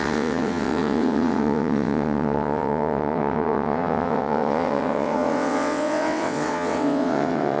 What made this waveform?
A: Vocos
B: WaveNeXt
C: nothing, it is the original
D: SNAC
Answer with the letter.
B